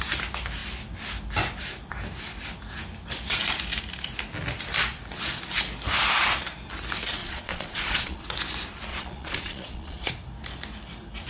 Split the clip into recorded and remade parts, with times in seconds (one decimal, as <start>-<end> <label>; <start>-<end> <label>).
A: 0.0-7.2 recorded; 7.2-8.2 remade; 8.2-8.9 recorded; 8.9-10.1 remade; 10.1-11.3 recorded

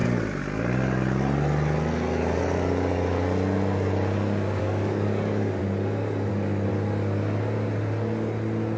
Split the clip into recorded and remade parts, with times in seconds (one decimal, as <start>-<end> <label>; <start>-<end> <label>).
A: 0.0-4.6 recorded; 4.6-5.6 remade; 5.6-6.3 recorded; 6.3-6.7 remade; 6.7-8.8 recorded